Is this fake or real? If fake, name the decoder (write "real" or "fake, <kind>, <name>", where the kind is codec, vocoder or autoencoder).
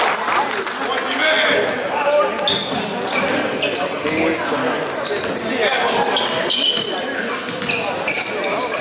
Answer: real